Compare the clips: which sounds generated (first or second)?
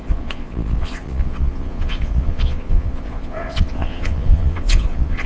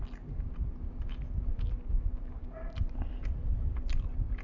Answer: first